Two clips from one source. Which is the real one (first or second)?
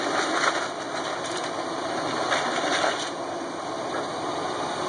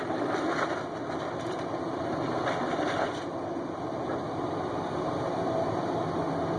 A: first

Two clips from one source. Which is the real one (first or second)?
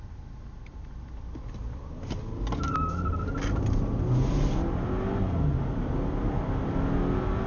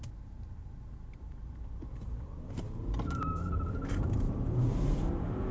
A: first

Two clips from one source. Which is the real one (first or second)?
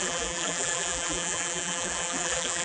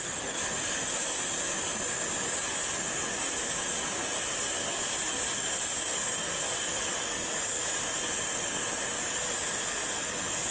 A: second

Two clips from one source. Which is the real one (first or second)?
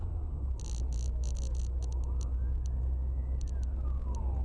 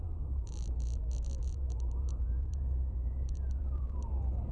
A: first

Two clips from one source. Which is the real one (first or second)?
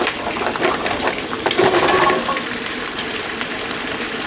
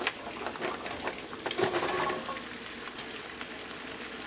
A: second